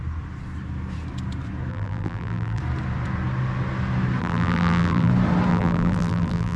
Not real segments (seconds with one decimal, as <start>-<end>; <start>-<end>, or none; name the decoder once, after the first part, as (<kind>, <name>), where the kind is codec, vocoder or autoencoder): 1.7-2.6 (vocoder, BigVGAN v2); 4.2-5.1; 5.5-6.6